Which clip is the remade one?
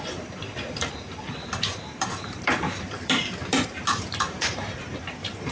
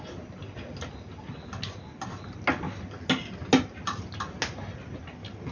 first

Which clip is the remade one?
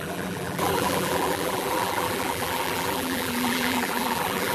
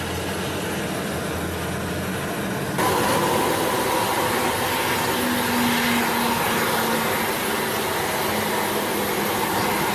first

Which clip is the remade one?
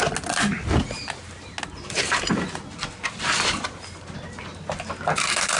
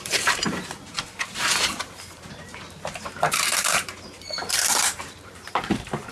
second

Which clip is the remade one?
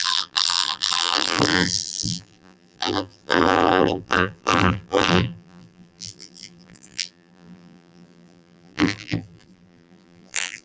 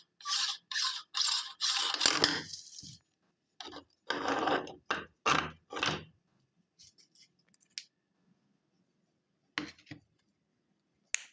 first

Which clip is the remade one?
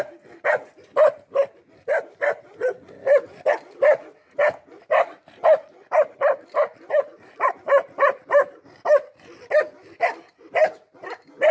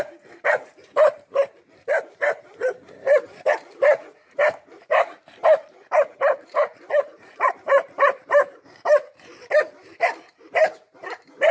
second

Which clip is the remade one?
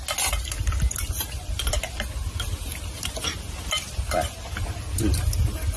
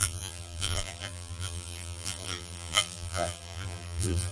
second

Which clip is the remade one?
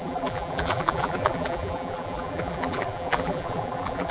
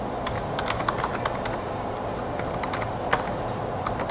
first